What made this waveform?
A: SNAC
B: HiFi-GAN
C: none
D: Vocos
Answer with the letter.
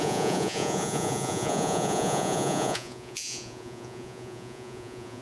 D